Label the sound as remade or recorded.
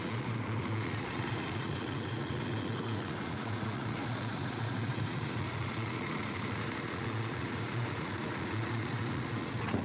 remade